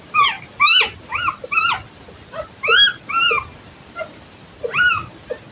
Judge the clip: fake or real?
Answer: real